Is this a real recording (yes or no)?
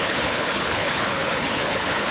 no